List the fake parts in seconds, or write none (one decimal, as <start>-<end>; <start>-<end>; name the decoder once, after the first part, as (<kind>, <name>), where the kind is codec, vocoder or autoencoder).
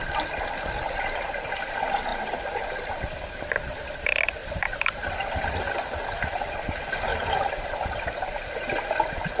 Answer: 4.4-5.5 (vocoder, BigVGAN v2)